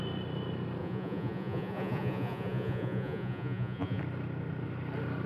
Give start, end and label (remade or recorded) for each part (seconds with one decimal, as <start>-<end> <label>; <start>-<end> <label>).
0.0-0.8 recorded; 0.8-4.0 remade; 4.0-5.3 recorded

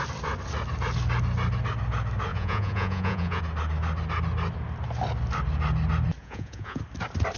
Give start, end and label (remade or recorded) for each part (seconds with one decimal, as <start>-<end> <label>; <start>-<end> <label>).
0.0-2.3 recorded; 2.3-3.4 remade; 3.4-6.2 recorded; 6.2-6.8 remade; 6.8-7.4 recorded